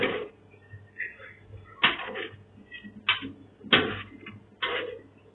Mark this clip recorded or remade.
recorded